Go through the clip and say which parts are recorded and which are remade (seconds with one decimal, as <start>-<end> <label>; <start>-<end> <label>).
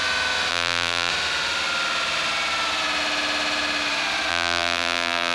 0.0-0.5 recorded; 0.5-1.1 remade; 1.1-4.3 recorded; 4.3-5.3 remade